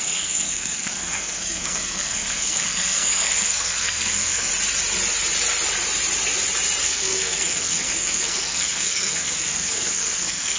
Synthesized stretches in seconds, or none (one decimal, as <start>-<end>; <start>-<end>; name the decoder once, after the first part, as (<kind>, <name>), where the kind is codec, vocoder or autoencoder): 0.0-4.5 (codec, SNAC); 6.8-10.6